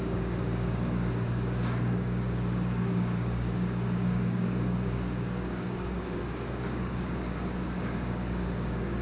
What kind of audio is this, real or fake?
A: fake